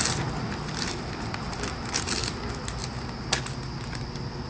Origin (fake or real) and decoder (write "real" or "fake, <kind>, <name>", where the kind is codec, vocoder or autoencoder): real